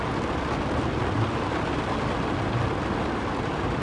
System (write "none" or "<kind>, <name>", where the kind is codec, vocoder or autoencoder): none